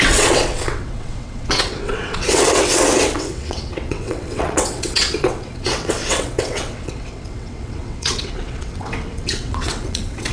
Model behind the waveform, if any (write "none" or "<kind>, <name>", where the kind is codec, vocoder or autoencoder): vocoder, WaveNeXt